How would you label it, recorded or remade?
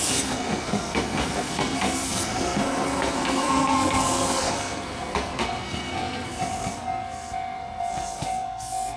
remade